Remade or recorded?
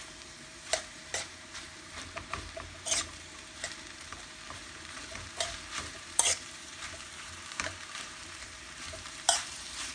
remade